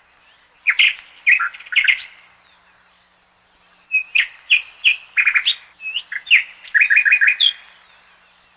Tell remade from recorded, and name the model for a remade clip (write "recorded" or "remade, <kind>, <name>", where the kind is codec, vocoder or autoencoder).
recorded